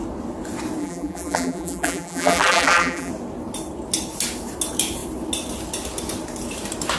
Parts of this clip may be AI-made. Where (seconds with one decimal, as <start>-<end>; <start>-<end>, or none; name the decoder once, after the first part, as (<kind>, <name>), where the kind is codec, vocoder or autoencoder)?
0.8-3.1 (vocoder, BigVGAN v2)